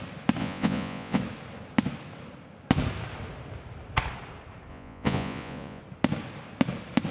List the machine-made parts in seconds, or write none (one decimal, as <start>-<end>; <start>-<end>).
0.4-1.2; 4.7-5.8